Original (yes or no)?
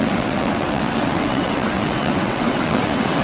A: no